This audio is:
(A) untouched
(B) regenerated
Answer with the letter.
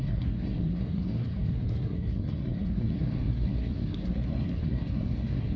B